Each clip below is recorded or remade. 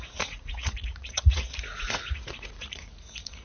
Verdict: remade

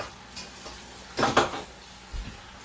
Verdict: recorded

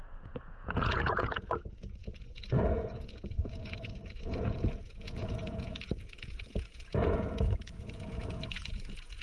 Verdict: remade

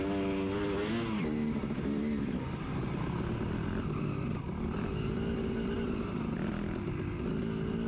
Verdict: recorded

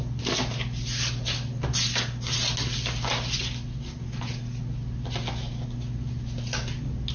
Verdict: recorded